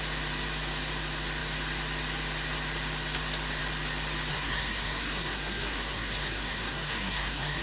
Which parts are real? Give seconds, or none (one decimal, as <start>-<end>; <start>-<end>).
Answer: 0.0-4.3